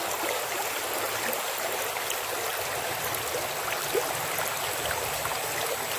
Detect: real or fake real